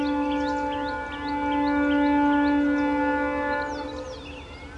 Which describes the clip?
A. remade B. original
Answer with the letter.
B